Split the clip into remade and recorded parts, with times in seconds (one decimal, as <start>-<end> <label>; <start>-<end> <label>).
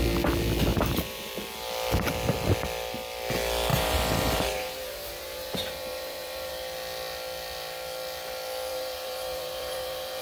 0.0-0.7 recorded; 0.7-1.3 remade; 1.3-3.7 recorded; 3.7-6.5 remade; 6.5-8.7 recorded; 8.7-10.2 remade